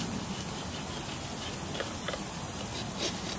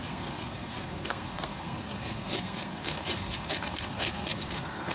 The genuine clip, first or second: first